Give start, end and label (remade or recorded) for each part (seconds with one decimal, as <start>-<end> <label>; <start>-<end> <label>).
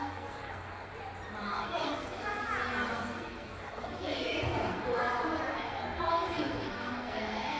0.0-0.9 remade; 0.9-1.5 recorded; 1.5-2.4 remade; 2.4-2.9 recorded; 2.9-5.0 remade; 5.0-5.5 recorded; 5.5-7.6 remade